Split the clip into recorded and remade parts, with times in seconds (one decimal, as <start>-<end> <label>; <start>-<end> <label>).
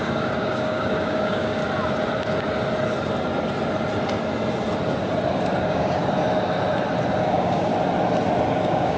0.0-1.6 remade; 1.6-5.6 recorded; 5.6-6.0 remade; 6.0-7.2 recorded; 7.2-7.7 remade; 7.7-8.5 recorded; 8.5-9.0 remade